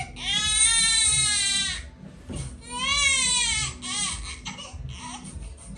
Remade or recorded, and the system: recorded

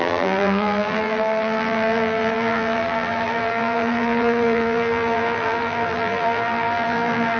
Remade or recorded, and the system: remade, vocoder, BigVGAN v2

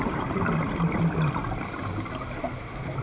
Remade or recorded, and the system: recorded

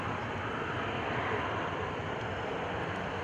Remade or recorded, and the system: recorded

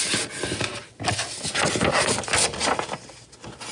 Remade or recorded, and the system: recorded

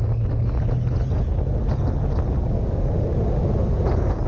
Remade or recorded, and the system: recorded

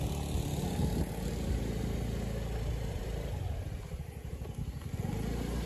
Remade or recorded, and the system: recorded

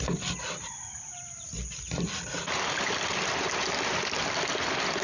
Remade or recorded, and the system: recorded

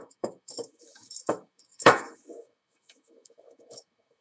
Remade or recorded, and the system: remade, autoencoder, DAC-VAE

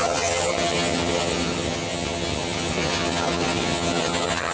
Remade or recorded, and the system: remade, vocoder, HiFi-GAN